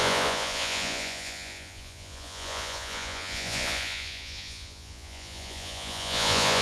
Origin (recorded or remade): remade